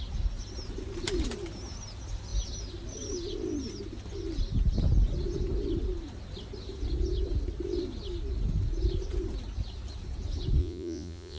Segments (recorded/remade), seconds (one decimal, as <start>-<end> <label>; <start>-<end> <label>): 0.0-10.6 recorded; 10.6-11.4 remade